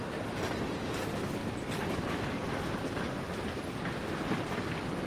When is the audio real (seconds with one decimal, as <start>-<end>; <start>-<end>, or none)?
0.0-5.1